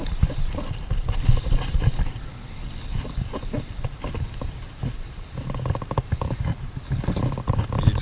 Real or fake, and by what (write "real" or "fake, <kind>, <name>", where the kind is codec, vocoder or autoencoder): real